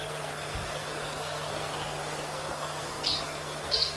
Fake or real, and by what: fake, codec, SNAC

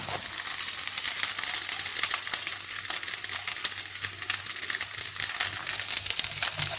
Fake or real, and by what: real